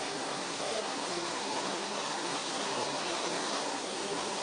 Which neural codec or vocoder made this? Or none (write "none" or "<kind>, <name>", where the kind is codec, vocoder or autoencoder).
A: codec, SNAC